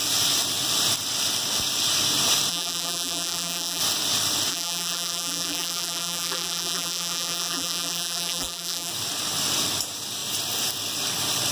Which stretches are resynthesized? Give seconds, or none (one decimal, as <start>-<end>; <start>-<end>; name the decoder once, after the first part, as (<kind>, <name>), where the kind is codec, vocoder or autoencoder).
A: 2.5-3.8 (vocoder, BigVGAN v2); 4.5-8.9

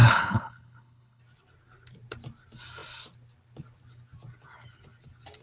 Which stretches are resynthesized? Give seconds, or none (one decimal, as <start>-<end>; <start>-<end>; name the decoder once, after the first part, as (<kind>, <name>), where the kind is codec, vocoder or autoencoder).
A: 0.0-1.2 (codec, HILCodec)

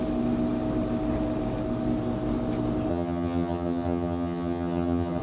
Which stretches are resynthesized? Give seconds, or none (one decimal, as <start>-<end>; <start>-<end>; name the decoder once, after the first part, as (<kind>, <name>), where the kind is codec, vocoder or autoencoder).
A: 2.9-5.2 (vocoder, HiFi-GAN)

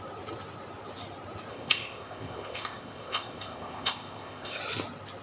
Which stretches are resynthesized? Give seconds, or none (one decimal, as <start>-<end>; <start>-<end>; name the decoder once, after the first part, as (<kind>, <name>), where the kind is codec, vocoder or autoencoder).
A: 1.5-4.6 (codec, ZipCodec)

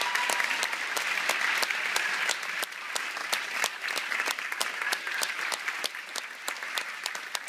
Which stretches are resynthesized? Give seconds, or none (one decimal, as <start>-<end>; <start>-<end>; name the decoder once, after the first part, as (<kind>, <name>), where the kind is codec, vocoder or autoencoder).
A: none

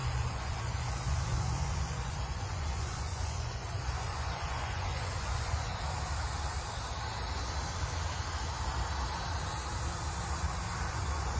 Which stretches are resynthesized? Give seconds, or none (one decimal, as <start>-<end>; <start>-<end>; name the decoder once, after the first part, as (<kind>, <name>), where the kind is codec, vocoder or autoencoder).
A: 0.0-5.7 (vocoder, Vocos); 10.9-11.4

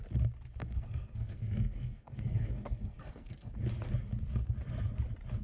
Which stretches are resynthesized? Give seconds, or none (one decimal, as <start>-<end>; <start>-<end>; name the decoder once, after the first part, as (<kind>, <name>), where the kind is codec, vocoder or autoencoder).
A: 0.6-3.5 (codec, SNAC)